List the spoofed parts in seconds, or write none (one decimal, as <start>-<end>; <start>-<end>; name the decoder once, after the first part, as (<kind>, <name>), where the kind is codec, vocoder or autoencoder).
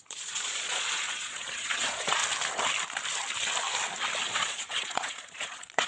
0.0-2.2 (vocoder, Vocos); 4.3-5.9